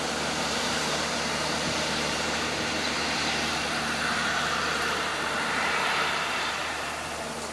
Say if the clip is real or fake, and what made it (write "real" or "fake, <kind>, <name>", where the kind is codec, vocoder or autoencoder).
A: fake, vocoder, BigVGAN v2